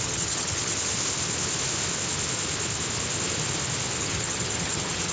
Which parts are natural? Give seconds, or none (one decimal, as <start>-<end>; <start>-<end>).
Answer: 0.9-4.0